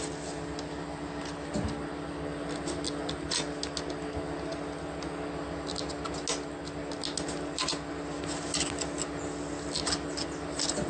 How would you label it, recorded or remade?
recorded